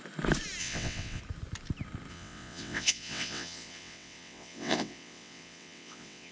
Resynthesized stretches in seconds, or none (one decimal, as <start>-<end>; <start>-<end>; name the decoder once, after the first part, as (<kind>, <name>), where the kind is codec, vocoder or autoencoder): 0.6-1.2 (vocoder, WaveNeXt); 2.1-6.3